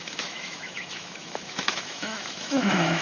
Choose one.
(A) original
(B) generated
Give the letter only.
B